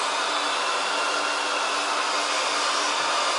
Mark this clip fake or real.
real